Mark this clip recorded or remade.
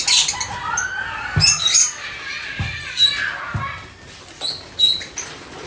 recorded